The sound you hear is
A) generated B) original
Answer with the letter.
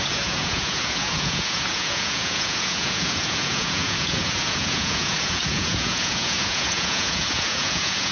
A